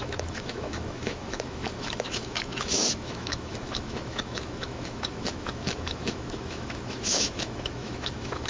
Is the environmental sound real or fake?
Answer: fake